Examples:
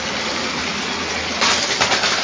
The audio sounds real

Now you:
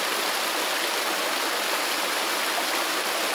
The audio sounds real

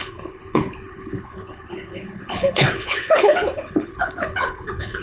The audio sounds fake